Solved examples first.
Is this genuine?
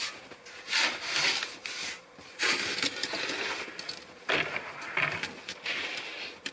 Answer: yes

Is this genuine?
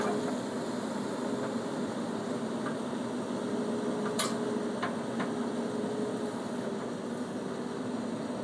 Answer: yes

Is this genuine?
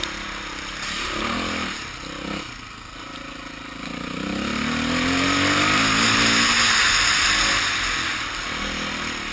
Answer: yes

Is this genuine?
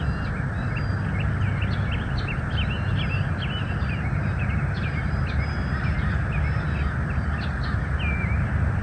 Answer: yes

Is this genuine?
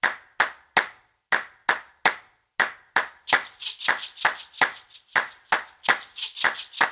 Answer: yes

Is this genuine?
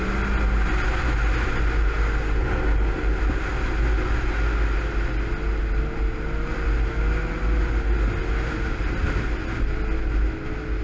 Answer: yes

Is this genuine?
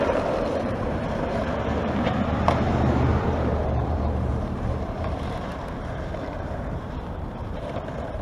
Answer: no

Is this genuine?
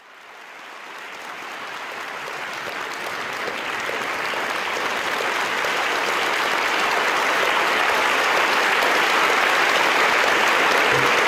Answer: yes